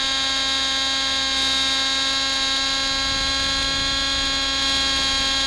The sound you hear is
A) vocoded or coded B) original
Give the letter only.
B